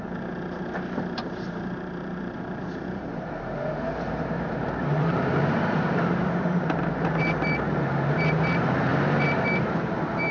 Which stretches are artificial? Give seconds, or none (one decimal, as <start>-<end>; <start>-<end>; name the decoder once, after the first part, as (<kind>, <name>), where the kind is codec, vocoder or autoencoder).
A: 0.0-8.9 (vocoder, BigVGAN v2); 9.6-10.3